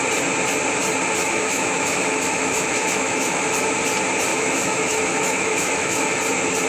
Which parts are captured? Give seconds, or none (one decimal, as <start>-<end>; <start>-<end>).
0.0-1.2; 3.5-4.3; 6.2-6.7

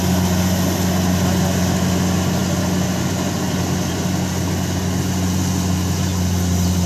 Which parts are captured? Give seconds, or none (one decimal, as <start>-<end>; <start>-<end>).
0.0-6.9

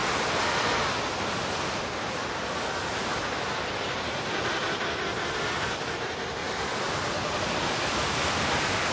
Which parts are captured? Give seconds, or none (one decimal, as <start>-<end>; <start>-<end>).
0.0-8.9

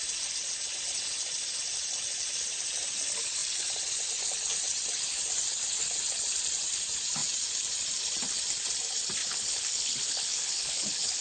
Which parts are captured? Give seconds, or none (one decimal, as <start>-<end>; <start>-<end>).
0.0-9.2

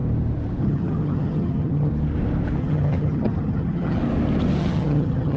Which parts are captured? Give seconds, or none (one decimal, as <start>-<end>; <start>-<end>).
0.0-0.6; 1.9-2.6; 4.0-4.6

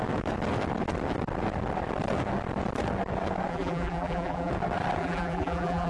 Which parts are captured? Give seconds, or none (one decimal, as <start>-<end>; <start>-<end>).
0.0-3.5; 4.5-5.0